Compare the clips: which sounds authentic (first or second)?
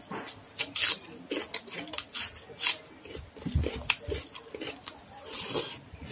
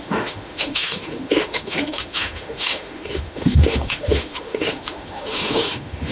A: first